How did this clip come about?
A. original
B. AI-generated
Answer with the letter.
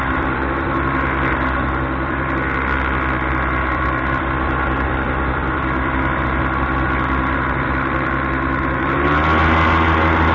B